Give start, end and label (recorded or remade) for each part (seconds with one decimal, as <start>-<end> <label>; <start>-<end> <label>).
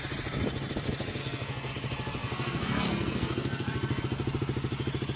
0.0-1.2 recorded; 1.2-1.7 remade; 1.7-2.2 recorded; 2.2-4.0 remade; 4.0-5.2 recorded